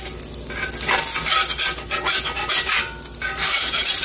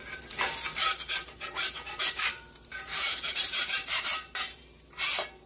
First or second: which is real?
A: first